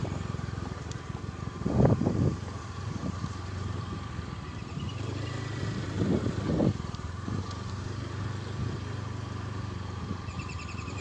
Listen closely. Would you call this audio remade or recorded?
remade